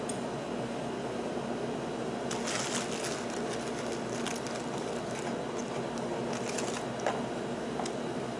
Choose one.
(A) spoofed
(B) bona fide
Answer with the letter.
B